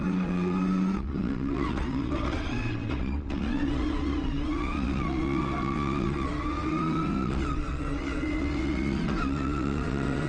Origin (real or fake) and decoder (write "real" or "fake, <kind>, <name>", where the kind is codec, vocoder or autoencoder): fake, vocoder, WaveNeXt